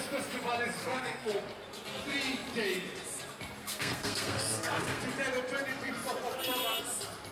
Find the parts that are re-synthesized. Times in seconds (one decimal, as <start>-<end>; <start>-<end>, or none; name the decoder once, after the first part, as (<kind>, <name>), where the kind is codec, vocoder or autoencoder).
0.8-1.4 (codec, SNAC); 3.6-5.0